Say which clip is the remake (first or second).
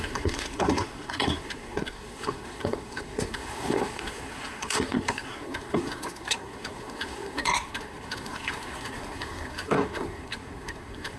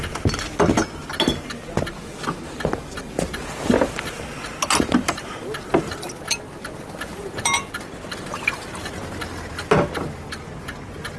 first